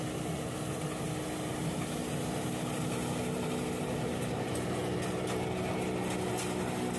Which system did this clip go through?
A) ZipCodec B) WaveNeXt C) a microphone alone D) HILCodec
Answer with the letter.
C